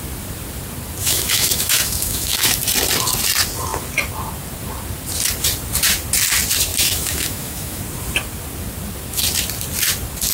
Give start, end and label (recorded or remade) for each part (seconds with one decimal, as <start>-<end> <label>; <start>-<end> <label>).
0.0-1.0 recorded; 1.0-2.6 remade; 2.6-6.7 recorded; 6.7-7.8 remade; 7.8-10.3 recorded